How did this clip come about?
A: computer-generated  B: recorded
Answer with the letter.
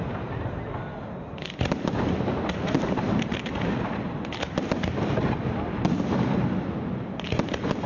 B